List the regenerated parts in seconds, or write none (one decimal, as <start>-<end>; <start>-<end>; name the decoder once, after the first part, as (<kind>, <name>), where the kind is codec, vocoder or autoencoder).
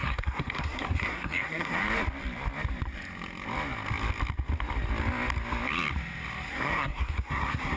0.0-1.8 (codec, SNAC); 6.5-7.8